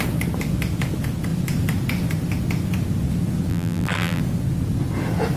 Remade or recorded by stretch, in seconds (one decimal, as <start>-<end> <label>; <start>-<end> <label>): 0.0-3.5 recorded; 3.5-4.2 remade; 4.2-5.4 recorded